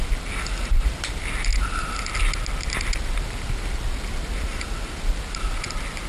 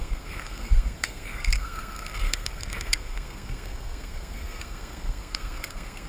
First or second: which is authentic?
first